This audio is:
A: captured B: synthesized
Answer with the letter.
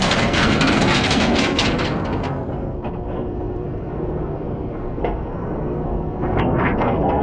B